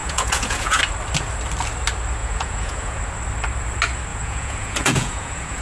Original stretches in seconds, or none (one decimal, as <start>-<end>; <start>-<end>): 0.8-2.2; 3.0-4.1